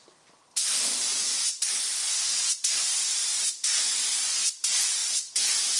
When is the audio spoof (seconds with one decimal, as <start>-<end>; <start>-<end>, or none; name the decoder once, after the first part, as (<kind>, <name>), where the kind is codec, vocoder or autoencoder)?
none